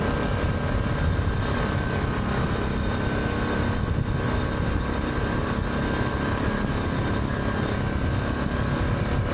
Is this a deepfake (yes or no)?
no